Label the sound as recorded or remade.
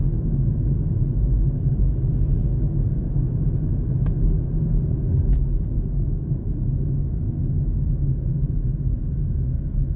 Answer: remade